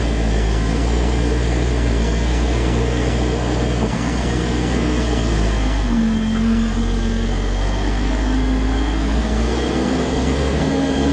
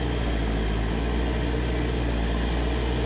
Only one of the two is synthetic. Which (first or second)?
first